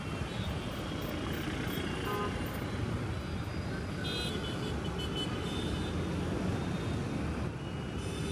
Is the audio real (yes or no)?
yes